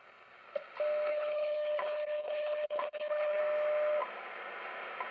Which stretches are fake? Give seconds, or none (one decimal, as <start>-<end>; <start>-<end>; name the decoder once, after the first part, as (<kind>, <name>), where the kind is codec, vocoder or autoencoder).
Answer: 1.1-3.4 (codec, HILCodec)